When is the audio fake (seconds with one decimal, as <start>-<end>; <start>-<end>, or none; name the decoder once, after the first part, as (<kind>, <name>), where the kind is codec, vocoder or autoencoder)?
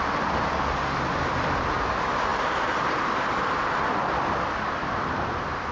none